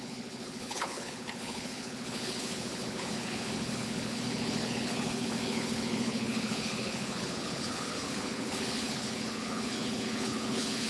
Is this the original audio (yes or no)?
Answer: no